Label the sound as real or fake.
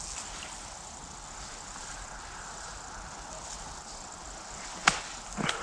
real